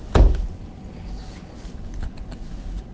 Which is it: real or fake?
real